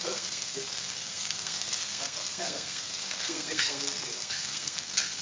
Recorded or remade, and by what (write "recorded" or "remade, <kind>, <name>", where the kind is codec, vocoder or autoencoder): remade, codec, SNAC